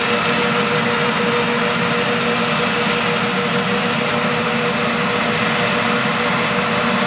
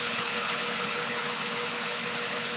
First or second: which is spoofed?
second